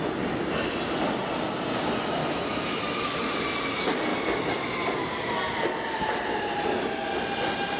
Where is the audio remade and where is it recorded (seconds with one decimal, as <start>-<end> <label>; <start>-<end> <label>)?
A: 0.0-2.2 recorded; 2.2-3.1 remade; 3.1-7.8 recorded